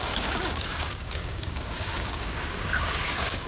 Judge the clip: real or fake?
fake